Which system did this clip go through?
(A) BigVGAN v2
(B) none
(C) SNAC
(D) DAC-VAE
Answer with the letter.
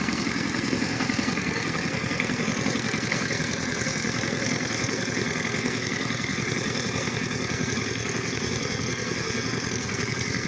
C